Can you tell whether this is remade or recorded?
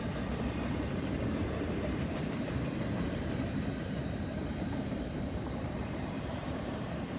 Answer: remade